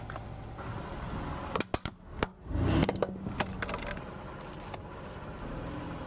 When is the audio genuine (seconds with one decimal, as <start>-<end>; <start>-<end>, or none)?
0.0-6.1